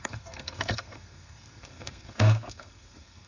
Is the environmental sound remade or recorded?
remade